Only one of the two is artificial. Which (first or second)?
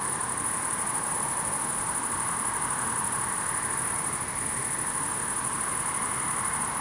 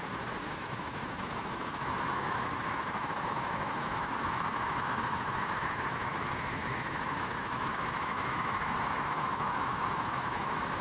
second